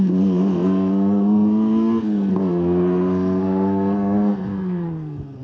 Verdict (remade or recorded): remade